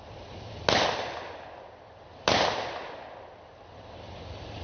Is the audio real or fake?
real